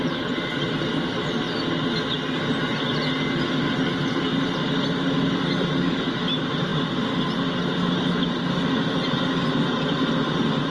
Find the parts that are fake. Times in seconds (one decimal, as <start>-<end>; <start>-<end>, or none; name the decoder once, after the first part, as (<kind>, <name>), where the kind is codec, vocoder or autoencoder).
none